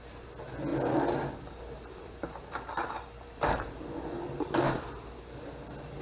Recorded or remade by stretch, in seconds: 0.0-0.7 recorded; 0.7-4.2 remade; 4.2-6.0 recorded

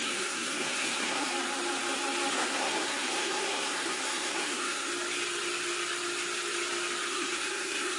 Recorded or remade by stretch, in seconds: 0.0-1.3 remade; 1.3-2.3 recorded; 2.3-4.9 remade; 4.9-7.1 recorded; 7.1-8.0 remade

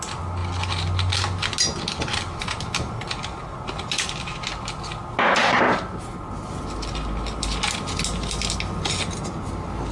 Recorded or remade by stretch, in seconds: 0.0-9.9 recorded

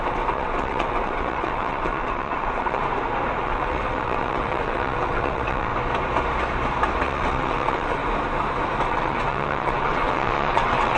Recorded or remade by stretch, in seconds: 0.0-2.8 remade; 2.8-3.4 recorded; 3.4-5.7 remade; 5.7-7.0 recorded; 7.0-8.0 remade; 8.0-8.9 recorded; 8.9-11.0 remade

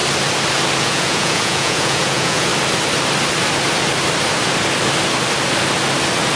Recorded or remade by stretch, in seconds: 0.0-0.8 recorded; 0.8-2.5 remade; 2.5-6.4 recorded

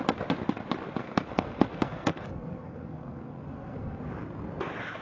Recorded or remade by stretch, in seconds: 0.0-1.0 recorded; 1.0-4.0 remade; 4.0-5.0 recorded

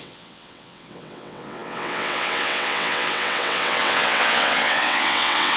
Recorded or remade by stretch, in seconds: 0.0-5.6 remade